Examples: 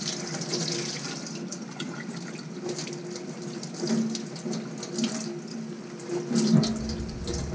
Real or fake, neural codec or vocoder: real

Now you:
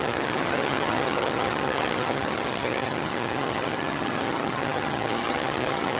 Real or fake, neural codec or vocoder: fake, vocoder, HiFi-GAN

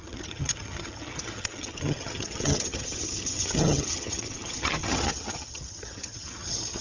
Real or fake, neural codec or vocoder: fake, vocoder, HiFi-GAN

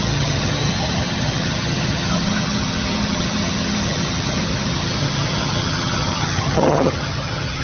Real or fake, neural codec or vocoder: fake, vocoder, HiFi-GAN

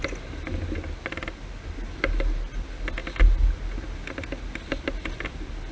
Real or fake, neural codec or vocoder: real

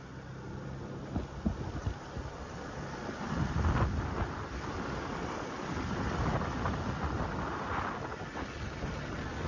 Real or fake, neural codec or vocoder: real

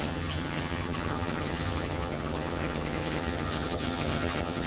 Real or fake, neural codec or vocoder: fake, vocoder, HiFi-GAN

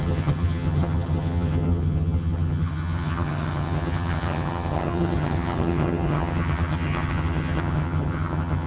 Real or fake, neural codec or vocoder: fake, vocoder, HiFi-GAN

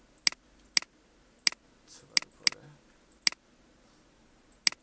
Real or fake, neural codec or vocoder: real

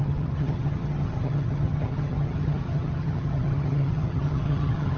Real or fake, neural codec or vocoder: fake, vocoder, HiFi-GAN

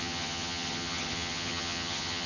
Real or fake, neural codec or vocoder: fake, vocoder, HiFi-GAN